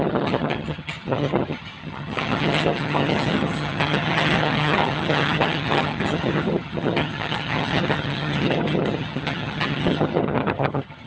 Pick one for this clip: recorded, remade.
remade